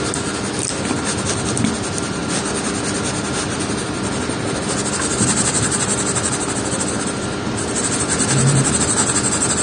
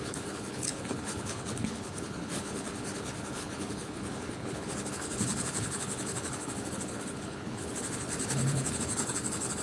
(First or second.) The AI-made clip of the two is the second